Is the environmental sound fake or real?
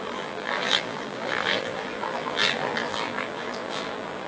fake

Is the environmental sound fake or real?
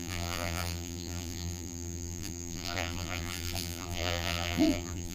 fake